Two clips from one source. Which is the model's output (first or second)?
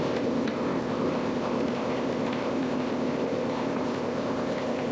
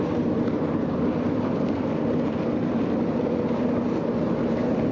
first